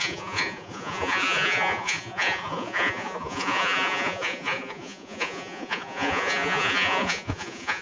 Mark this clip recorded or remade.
remade